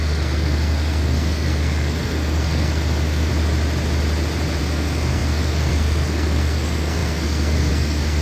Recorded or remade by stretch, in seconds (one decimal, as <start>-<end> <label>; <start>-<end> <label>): 0.0-3.3 remade; 3.3-4.6 recorded; 4.6-8.2 remade